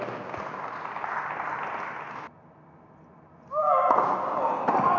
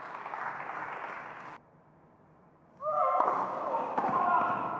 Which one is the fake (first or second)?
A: second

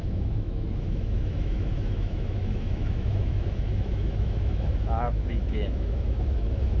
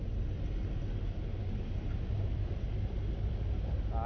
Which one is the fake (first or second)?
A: first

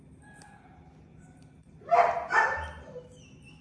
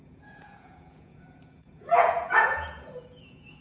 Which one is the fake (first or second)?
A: second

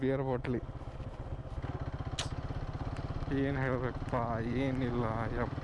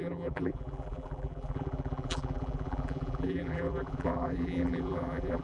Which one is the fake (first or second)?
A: second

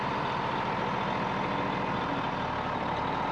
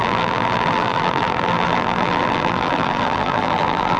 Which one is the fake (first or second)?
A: second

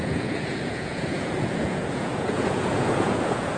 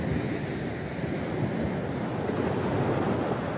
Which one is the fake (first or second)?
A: first